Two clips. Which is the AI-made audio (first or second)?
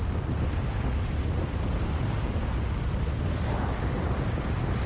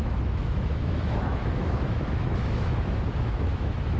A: second